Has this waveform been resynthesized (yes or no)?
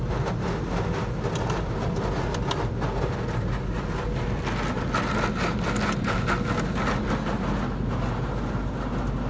no